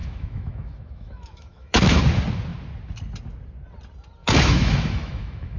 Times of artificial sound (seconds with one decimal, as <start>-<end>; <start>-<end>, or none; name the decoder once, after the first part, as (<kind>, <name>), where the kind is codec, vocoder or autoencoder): 0.0-2.0 (autoencoder, DAC-VAE); 4.2-5.6